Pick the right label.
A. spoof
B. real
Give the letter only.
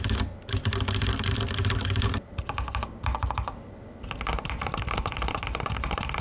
B